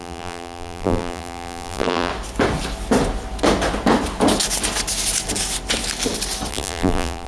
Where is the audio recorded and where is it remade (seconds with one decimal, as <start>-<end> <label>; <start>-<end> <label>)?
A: 0.0-2.1 remade; 2.1-6.5 recorded; 6.5-7.3 remade